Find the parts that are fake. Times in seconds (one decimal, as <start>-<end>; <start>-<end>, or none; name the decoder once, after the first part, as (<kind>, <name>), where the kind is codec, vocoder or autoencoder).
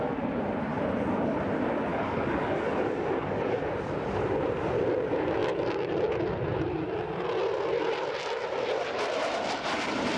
1.9-3.6 (codec, DAC)